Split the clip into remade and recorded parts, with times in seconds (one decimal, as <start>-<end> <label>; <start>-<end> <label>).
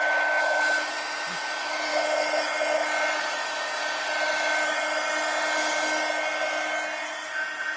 0.0-7.8 recorded